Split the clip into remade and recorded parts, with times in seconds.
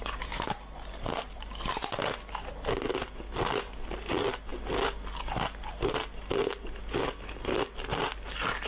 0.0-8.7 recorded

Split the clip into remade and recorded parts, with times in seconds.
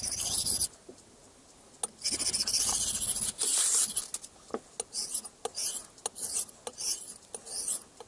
0.0-8.1 recorded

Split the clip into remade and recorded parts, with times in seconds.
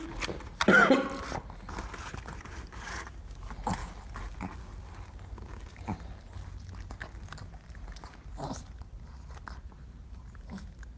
0.0-11.0 recorded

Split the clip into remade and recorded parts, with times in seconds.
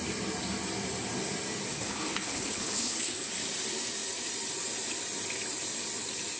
0.0-1.7 recorded; 1.7-3.3 remade; 3.3-6.4 recorded